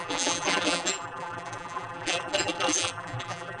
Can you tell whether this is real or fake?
fake